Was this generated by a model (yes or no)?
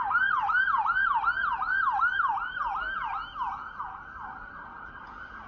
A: no